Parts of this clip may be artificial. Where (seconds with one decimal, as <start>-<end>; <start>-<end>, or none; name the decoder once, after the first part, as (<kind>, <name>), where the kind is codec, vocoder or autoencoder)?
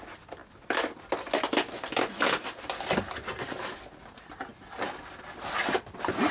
none